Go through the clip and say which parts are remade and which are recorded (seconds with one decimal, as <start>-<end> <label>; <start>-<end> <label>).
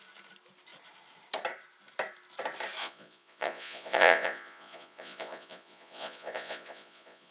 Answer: 0.0-2.8 recorded; 2.8-7.3 remade